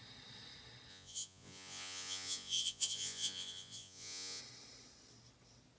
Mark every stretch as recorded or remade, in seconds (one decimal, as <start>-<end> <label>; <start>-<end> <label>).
0.0-0.9 recorded; 0.9-4.4 remade; 4.4-5.8 recorded